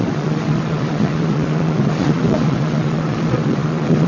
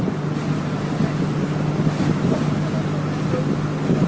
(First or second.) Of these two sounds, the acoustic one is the second